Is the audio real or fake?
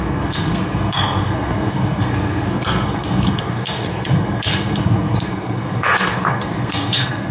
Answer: fake